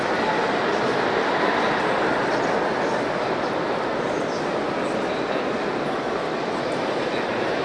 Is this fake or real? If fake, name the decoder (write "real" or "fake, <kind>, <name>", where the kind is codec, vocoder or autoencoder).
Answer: real